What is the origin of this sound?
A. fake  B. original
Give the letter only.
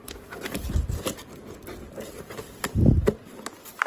B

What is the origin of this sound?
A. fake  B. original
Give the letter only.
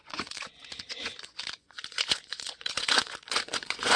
A